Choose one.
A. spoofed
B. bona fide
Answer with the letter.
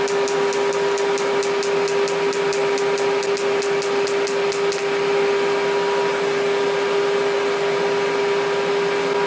B